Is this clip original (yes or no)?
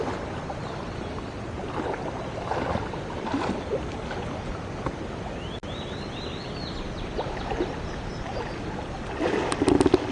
yes